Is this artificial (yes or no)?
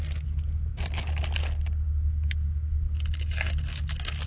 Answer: no